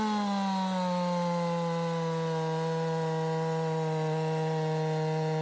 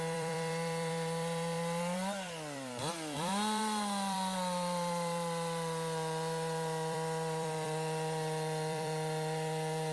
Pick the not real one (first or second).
second